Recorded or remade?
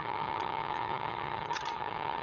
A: remade